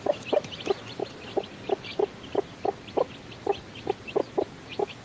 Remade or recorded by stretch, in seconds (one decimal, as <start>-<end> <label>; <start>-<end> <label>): 0.0-5.0 recorded